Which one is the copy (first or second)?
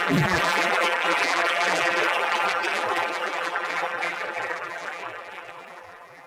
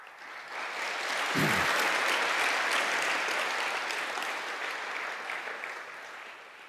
first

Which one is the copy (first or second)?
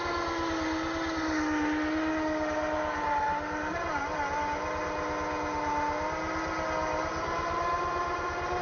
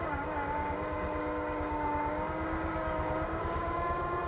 second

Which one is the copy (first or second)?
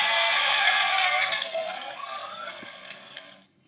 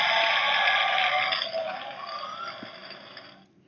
first